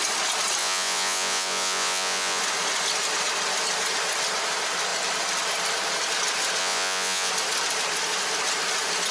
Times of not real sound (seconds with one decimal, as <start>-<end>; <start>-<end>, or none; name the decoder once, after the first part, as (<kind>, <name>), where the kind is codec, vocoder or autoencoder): 0.6-2.4 (vocoder, Vocos); 6.6-7.3